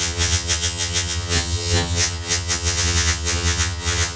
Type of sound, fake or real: fake